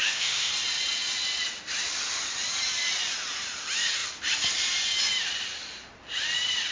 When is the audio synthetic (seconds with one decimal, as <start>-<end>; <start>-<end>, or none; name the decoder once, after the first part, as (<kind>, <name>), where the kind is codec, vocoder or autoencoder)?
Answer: 0.0-0.5 (autoencoder, DAC-VAE)